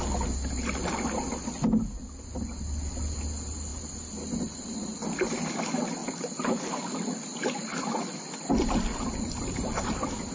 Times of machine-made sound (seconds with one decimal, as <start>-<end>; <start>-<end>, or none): none